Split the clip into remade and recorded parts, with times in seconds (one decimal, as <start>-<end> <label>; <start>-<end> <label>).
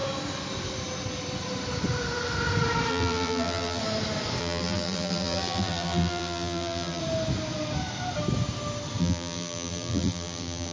0.0-2.9 recorded; 2.9-3.8 remade; 3.8-4.4 recorded; 4.4-7.0 remade; 7.0-9.0 recorded; 9.0-10.7 remade